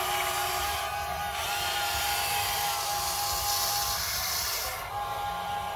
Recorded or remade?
recorded